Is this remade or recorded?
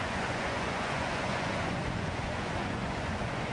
remade